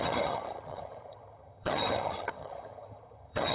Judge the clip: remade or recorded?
remade